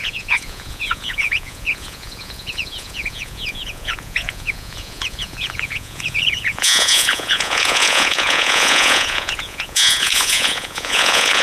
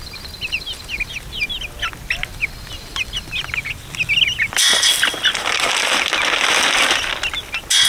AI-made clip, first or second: first